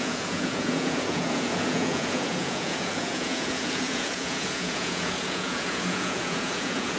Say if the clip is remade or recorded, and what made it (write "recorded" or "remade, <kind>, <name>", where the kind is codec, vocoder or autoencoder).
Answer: remade, vocoder, Vocos